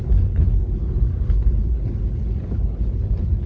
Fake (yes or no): yes